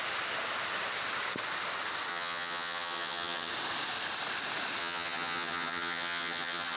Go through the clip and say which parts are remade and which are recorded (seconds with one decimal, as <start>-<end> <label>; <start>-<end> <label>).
0.0-2.1 recorded; 2.1-3.5 remade; 3.5-4.8 recorded; 4.8-6.8 remade